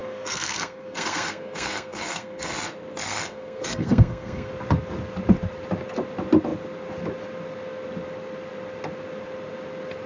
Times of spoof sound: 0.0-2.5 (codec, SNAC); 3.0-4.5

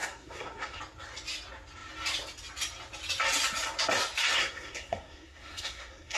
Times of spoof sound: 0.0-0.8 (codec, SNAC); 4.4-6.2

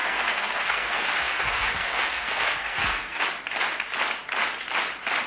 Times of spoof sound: 0.0-3.2 (codec, SNAC)